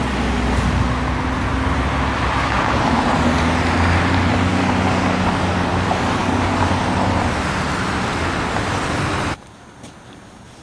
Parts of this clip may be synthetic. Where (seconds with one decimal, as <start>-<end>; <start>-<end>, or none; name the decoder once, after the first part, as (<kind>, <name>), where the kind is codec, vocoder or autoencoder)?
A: 4.5-5.7 (codec, DAC); 6.2-6.7